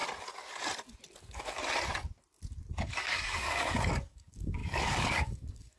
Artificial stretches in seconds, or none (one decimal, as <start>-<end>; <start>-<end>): 1.2-1.6; 2.8-5.8